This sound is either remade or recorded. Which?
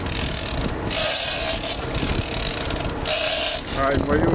recorded